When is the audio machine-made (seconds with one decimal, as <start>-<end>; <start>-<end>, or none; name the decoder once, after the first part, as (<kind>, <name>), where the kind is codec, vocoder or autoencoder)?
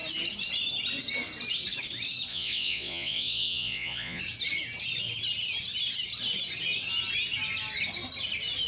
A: 2.3-4.2 (vocoder, Vocos)